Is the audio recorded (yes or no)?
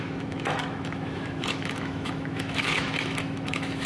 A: no